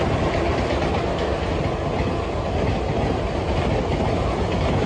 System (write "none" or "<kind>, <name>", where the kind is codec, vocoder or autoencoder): none